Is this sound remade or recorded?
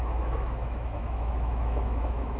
remade